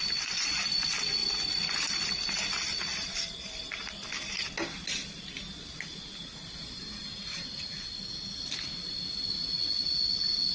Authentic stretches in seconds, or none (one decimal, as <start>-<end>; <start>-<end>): 0.0-10.5